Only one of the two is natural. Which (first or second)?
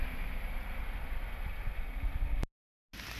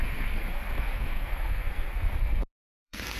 first